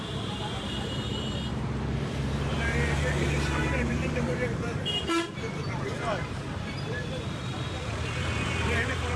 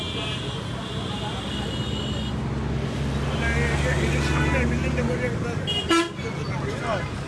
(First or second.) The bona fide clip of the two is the second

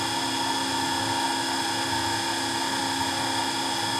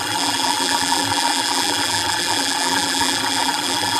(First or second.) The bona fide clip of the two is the first